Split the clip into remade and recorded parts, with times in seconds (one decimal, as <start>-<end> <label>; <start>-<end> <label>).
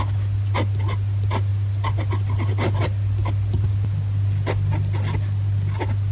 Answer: 0.0-6.1 recorded